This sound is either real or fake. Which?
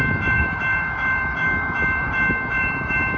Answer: fake